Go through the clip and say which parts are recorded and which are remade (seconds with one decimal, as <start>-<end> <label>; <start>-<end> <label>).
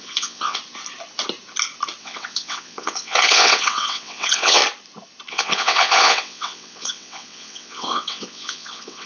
0.0-0.6 remade; 0.6-2.0 recorded; 2.0-4.6 remade; 4.6-5.3 recorded; 5.3-9.1 remade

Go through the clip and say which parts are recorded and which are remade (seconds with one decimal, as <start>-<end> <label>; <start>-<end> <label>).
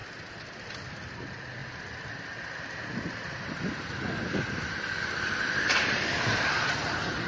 0.0-7.3 recorded